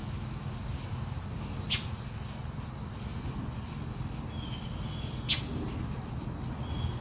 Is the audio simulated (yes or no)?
no